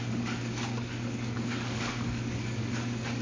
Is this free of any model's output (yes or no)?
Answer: no